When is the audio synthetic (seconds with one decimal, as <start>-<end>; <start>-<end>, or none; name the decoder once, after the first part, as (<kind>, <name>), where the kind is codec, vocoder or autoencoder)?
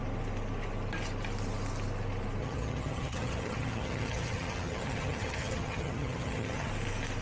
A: 2.4-6.7 (vocoder, HiFi-GAN)